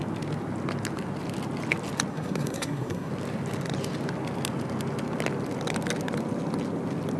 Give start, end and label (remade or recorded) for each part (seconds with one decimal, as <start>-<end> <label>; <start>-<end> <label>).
0.0-2.1 recorded; 2.1-3.1 remade; 3.1-7.2 recorded